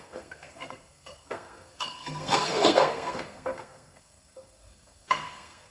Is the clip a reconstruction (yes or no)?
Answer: yes